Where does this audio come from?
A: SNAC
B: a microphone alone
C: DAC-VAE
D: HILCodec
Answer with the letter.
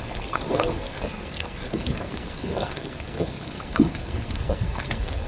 A